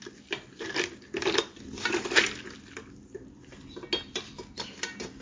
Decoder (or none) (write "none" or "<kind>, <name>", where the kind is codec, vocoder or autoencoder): none